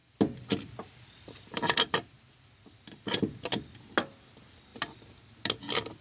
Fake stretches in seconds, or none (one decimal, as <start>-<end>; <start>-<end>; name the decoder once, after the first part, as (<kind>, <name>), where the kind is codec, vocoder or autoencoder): 0.0-2.5 (vocoder, BigVGAN v2); 4.7-5.2